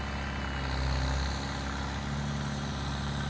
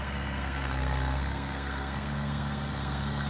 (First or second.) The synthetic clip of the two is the second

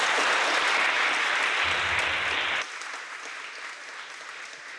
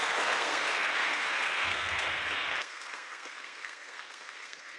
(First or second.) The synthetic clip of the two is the second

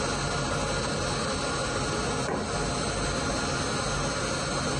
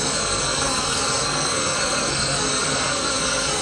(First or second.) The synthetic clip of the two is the second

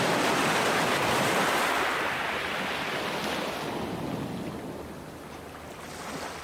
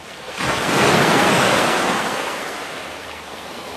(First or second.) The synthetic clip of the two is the second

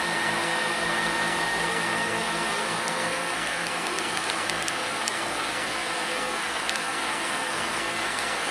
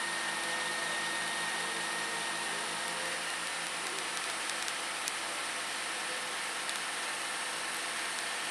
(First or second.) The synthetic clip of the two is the first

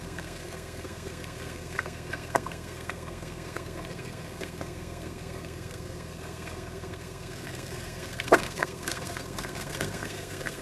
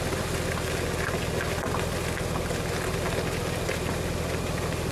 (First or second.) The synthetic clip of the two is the first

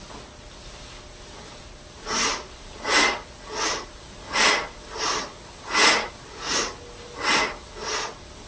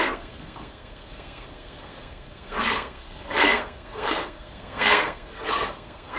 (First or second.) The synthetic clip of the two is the second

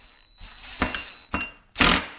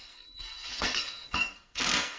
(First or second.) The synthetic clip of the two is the second